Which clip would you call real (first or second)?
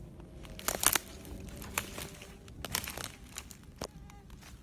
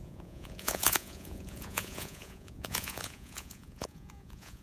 first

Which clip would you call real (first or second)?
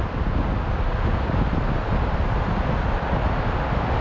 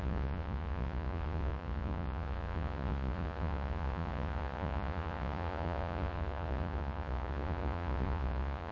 first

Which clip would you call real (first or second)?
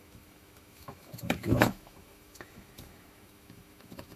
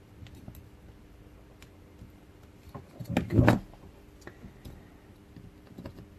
second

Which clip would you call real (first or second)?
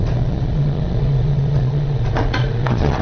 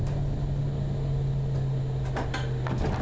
second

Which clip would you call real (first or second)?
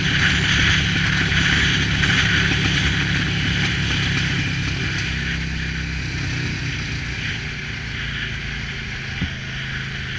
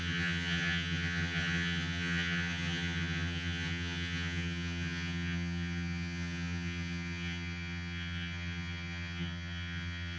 first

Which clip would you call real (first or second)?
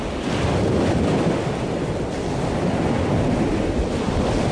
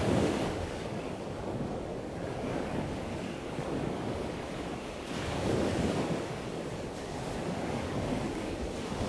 first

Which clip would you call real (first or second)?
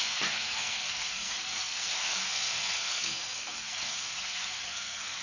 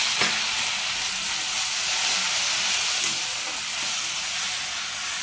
second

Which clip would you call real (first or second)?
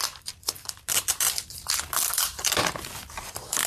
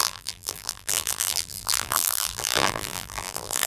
first